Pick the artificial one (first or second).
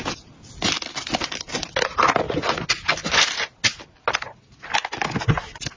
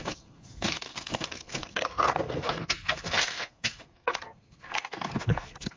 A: second